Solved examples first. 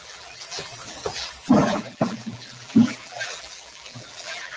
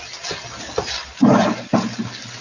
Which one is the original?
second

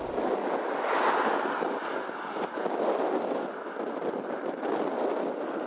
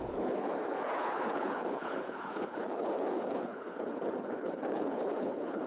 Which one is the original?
first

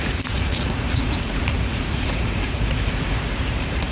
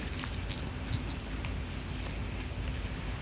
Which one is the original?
second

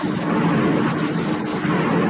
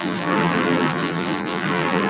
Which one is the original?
first